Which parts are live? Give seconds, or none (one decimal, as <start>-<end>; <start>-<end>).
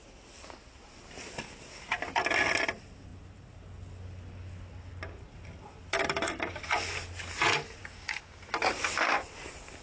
0.0-7.8; 8.5-9.8